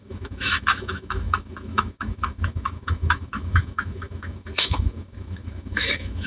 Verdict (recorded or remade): remade